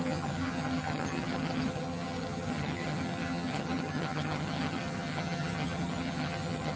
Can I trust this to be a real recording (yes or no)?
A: no